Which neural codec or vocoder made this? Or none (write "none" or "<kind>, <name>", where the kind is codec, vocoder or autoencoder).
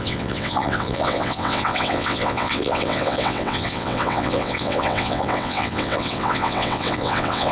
vocoder, WaveNeXt